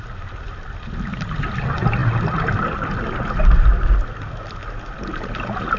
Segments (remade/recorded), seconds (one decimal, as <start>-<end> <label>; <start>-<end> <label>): 0.0-5.8 recorded